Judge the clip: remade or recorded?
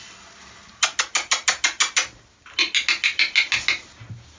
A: recorded